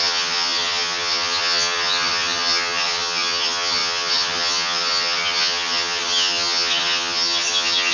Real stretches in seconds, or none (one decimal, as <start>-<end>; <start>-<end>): none